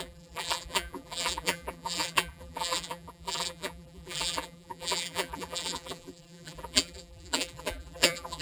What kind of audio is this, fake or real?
fake